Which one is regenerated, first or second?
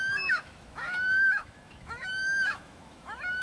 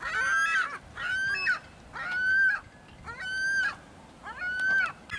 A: first